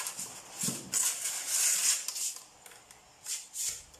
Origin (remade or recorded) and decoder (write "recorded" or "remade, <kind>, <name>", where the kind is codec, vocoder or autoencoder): recorded